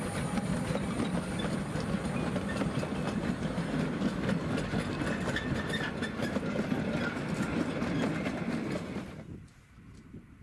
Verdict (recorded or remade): recorded